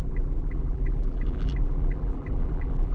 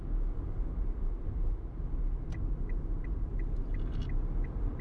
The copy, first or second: first